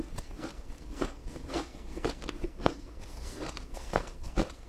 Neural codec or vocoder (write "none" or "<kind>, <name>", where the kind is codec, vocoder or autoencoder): codec, SNAC